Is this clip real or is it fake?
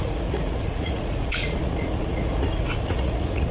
fake